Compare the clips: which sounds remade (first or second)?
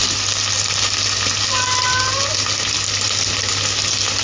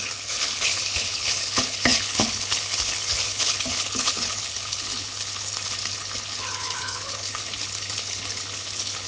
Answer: second